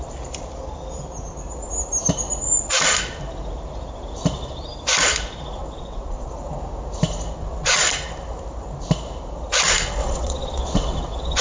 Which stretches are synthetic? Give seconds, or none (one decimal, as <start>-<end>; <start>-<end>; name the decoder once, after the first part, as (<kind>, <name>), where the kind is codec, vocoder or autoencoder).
5.6-6.3 (vocoder, WaveNeXt); 7.4-7.9; 10.0-11.4